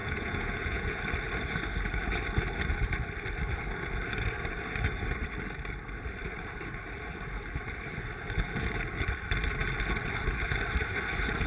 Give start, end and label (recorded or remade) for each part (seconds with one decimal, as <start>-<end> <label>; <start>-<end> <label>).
0.0-1.0 remade; 1.0-11.5 recorded